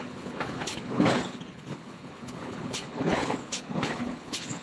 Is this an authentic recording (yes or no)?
no